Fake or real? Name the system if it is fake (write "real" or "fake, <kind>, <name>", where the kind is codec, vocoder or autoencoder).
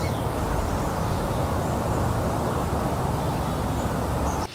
real